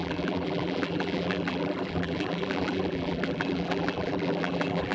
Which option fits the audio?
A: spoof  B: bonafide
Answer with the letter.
A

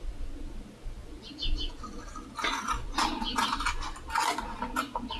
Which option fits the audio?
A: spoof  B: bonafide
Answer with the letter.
B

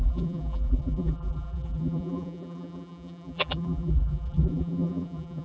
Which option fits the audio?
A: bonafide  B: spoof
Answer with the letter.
B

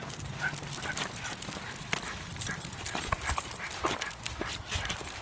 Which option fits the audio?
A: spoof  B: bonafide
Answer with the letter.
B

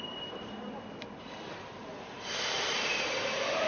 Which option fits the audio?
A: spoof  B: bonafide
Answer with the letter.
A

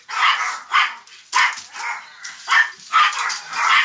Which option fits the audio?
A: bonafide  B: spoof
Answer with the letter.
A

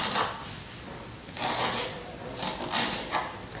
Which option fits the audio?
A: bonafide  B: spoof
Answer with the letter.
B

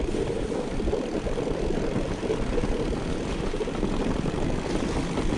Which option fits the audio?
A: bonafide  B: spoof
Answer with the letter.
A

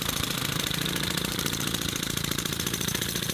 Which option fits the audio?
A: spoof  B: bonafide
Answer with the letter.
A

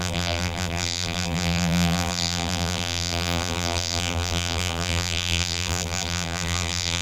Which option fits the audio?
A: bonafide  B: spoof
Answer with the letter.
B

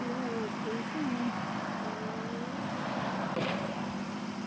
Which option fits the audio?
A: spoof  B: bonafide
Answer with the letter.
A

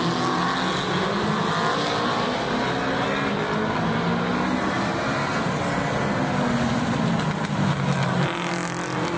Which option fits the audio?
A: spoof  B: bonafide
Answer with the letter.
B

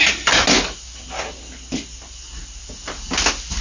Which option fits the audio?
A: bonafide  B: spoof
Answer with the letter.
A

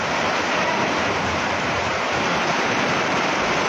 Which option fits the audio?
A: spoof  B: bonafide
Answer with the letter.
A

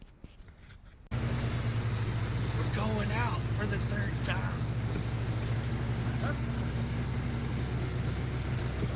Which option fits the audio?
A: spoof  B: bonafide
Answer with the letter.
B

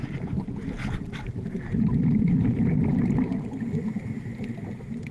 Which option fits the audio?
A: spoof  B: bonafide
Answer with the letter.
A